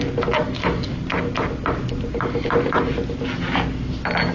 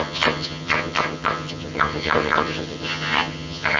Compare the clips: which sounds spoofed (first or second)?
second